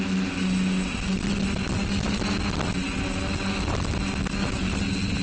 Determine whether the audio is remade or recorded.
recorded